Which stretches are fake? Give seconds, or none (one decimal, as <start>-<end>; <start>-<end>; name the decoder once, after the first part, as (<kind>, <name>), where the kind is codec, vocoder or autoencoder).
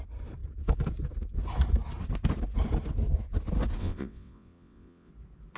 3.8-5.1 (vocoder, WaveNeXt)